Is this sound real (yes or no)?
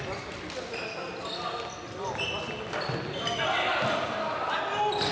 yes